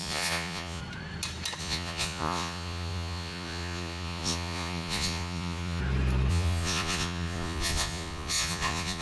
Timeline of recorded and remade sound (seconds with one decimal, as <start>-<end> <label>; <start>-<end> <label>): 0.0-0.8 remade; 0.8-1.6 recorded; 1.6-5.8 remade; 5.8-6.3 recorded; 6.3-9.0 remade